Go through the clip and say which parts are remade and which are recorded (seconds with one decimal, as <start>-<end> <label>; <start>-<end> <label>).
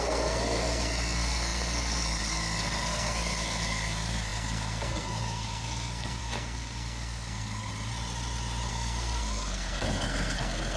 0.0-7.7 remade; 7.7-8.7 recorded; 8.7-10.8 remade